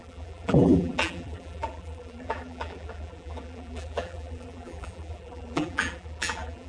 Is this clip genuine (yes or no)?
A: no